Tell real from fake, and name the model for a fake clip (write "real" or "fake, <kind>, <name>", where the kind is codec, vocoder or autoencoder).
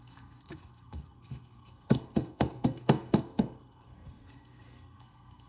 fake, codec, SNAC